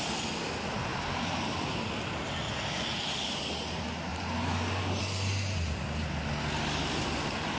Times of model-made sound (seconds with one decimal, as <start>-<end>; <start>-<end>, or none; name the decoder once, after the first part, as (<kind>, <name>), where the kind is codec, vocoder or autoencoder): none